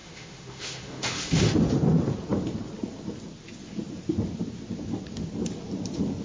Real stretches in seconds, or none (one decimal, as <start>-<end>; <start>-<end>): 1.4-6.2